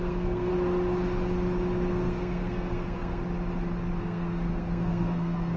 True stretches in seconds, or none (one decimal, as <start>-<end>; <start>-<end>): 0.5-1.9; 3.2-4.0